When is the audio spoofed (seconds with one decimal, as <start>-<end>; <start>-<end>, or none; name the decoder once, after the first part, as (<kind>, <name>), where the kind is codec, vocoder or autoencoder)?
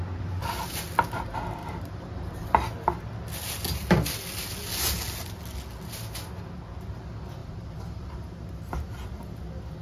1.6-2.3 (vocoder, BigVGAN v2); 7.4-9.4